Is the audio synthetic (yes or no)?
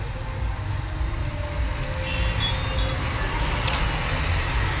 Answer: no